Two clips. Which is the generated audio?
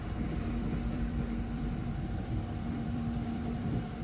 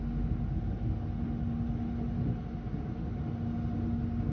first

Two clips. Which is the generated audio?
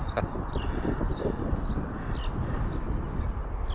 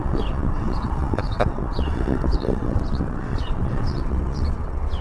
second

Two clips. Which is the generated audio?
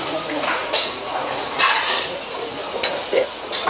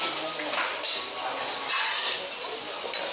first